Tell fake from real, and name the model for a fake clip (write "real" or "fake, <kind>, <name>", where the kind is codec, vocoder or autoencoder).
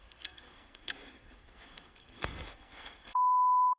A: fake, codec, SNAC